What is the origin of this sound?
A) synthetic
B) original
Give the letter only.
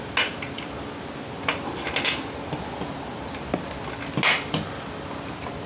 B